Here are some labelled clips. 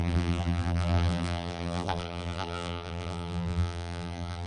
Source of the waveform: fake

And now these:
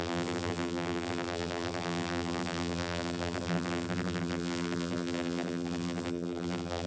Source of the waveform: fake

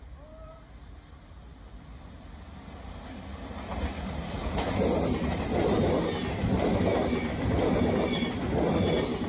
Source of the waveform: real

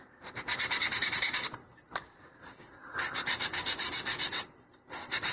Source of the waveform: fake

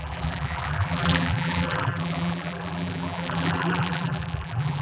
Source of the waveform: fake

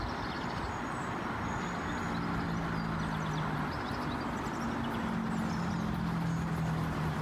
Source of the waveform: real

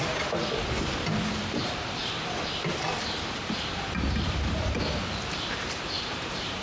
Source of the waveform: fake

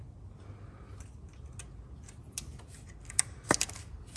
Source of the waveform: real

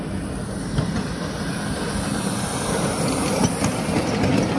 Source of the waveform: real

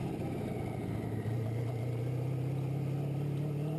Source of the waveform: real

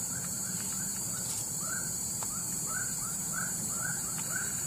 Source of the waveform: fake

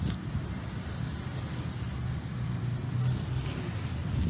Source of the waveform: real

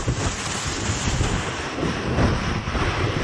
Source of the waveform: fake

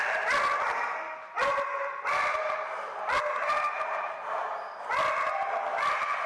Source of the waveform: real